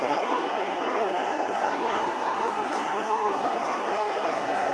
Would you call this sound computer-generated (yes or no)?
yes